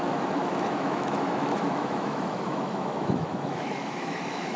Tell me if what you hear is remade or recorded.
remade